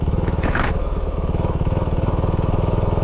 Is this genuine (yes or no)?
no